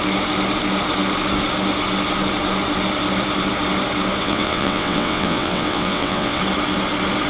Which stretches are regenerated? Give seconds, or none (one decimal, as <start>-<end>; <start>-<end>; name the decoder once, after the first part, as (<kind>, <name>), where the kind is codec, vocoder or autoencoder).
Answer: 4.2-6.4 (vocoder, WaveNeXt)